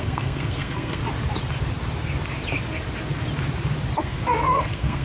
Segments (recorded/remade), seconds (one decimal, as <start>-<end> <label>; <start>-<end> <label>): 0.0-1.0 remade; 1.0-4.0 recorded; 4.0-5.0 remade